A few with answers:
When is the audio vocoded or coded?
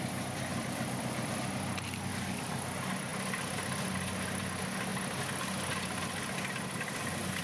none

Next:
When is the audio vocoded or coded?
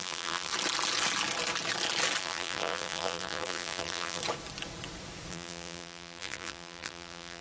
0.0-0.5 (vocoder, BigVGAN v2); 2.2-4.2; 5.3-7.4